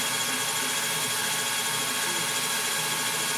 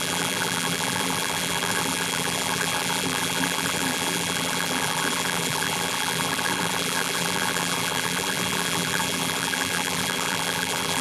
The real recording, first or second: first